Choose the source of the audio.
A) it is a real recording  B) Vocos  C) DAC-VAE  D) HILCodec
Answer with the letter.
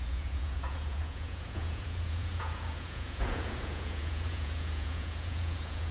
B